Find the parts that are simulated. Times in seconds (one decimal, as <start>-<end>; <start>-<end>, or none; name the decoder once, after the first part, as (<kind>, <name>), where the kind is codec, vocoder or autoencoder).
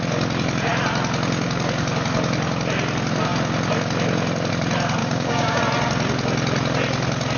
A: 5.0-5.6 (codec, DAC)